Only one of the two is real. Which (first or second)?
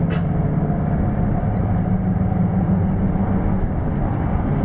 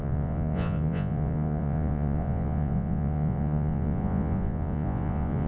first